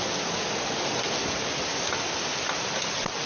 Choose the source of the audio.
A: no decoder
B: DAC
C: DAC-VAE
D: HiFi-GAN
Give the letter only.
A